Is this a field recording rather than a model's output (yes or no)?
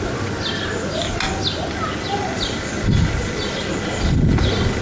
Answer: yes